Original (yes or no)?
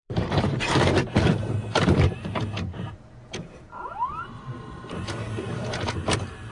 no